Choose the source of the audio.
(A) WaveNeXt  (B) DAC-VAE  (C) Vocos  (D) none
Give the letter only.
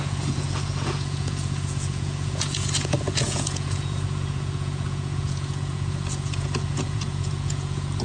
C